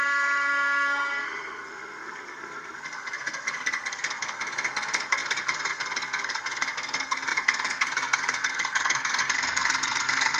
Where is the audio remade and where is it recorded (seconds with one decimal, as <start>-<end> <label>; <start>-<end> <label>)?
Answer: 0.0-10.4 remade